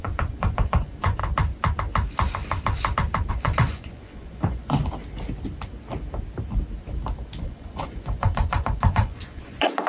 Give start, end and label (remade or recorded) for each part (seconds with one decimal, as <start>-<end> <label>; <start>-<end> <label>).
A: 0.0-1.2 remade; 1.2-3.3 recorded; 3.3-4.8 remade; 4.8-7.4 recorded; 7.4-9.9 remade